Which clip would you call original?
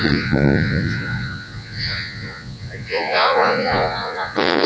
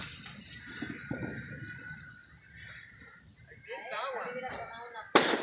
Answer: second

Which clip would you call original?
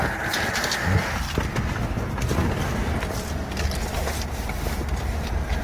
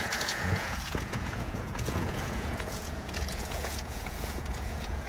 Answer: first